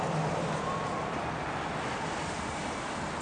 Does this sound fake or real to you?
real